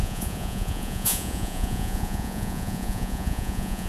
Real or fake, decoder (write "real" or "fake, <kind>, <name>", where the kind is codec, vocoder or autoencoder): fake, vocoder, Vocos